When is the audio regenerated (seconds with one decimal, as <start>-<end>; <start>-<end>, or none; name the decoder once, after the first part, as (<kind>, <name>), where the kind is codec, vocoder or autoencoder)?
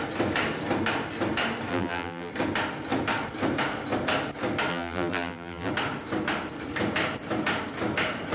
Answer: 1.7-2.3 (vocoder, BigVGAN v2); 4.7-5.7